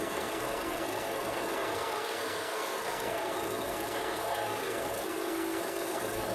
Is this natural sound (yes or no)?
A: no